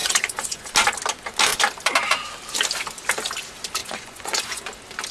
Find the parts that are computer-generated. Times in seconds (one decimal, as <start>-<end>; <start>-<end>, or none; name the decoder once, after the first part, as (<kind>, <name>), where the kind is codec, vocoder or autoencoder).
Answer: 0.0-0.7 (vocoder, Vocos); 3.8-4.6